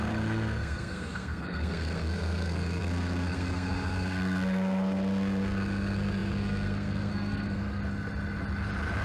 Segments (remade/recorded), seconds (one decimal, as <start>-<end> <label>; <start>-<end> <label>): 0.0-7.8 remade; 7.8-9.0 recorded

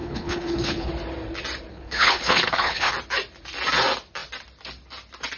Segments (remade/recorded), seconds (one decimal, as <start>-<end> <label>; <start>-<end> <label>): 0.0-0.9 remade; 0.9-1.7 recorded; 1.7-2.9 remade; 2.9-5.4 recorded

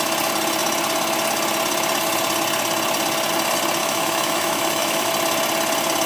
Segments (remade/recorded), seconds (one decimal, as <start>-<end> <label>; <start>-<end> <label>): 0.0-3.8 recorded; 3.8-5.1 remade; 5.1-6.1 recorded